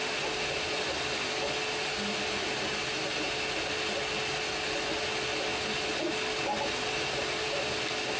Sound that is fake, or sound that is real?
real